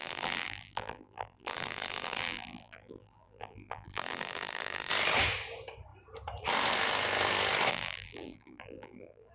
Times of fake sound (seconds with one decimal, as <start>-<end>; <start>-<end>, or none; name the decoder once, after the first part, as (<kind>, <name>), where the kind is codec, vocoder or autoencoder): 0.0-4.9 (vocoder, BigVGAN v2); 7.7-9.3